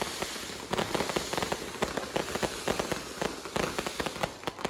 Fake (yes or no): no